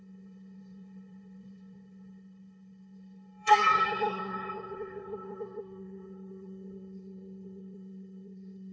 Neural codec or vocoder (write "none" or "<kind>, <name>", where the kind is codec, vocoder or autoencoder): codec, SNAC